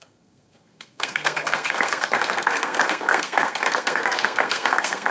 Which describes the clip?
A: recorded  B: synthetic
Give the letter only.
B